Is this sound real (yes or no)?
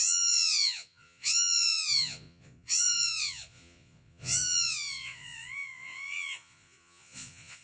no